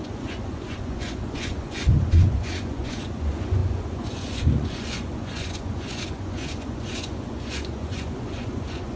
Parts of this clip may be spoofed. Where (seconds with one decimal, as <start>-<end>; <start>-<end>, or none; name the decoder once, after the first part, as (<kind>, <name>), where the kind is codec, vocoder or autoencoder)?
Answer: 0.0-9.0 (vocoder, Vocos)